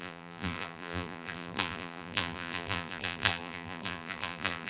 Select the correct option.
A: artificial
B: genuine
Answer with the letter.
A